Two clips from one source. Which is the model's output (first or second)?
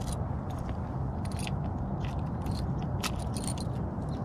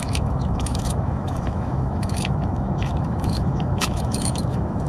second